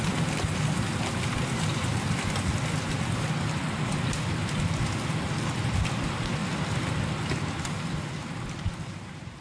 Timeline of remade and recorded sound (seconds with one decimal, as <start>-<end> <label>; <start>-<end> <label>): 0.0-9.4 recorded